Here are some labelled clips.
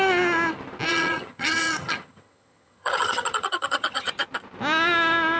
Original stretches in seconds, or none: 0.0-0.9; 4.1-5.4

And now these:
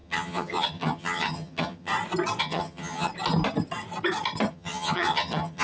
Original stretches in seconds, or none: 1.9-2.4; 3.1-4.5